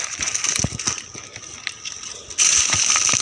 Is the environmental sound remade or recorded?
recorded